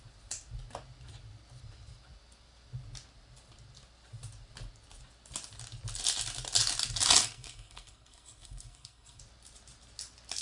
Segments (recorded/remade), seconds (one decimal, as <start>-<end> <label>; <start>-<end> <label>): 0.0-7.2 recorded; 7.2-9.2 remade; 9.2-10.4 recorded